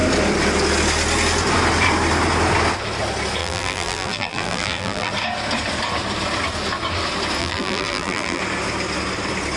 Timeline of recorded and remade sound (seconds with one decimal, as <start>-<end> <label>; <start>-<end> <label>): 0.0-3.4 recorded; 3.4-5.1 remade; 5.1-7.4 recorded; 7.4-8.4 remade; 8.4-9.6 recorded